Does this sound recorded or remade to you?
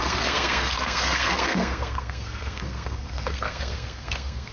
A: remade